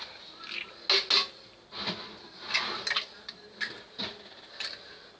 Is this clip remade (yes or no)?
no